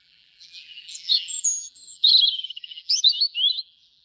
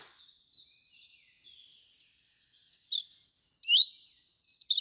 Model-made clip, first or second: first